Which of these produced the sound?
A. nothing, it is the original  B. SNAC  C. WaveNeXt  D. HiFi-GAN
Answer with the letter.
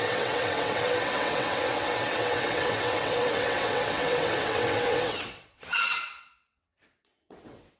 C